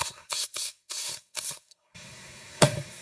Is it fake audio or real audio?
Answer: fake